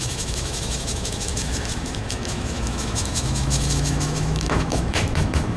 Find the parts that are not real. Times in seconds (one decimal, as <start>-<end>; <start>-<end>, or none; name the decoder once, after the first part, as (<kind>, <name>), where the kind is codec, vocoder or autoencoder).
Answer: 0.0-5.6 (autoencoder, DAC-VAE)